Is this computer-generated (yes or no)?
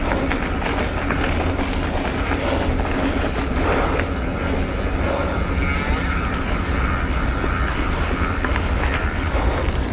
no